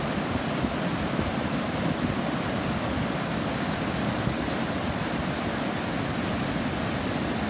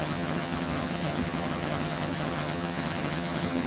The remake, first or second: second